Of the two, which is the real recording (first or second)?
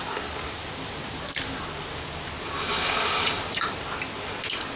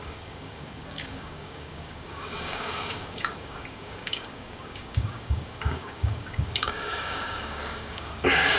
first